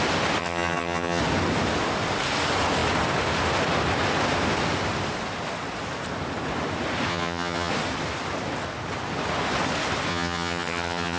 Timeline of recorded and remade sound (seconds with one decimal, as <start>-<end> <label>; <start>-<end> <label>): 0.0-0.4 recorded; 0.4-1.2 remade; 1.2-7.1 recorded; 7.1-7.7 remade; 7.7-10.1 recorded; 10.1-11.2 remade